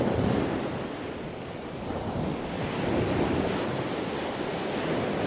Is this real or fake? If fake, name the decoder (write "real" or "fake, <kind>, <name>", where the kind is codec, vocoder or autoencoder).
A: real